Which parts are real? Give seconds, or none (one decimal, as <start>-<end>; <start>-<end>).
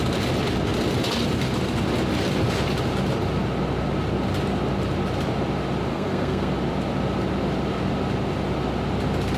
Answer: 0.0-5.9; 6.5-9.4